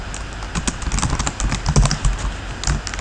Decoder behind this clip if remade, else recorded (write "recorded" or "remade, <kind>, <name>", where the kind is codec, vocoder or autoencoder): recorded